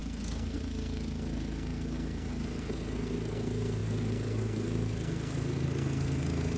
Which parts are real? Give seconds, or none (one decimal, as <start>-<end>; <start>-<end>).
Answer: none